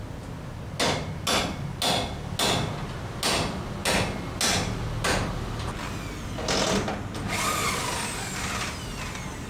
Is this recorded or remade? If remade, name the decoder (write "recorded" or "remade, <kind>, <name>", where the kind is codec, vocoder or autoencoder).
recorded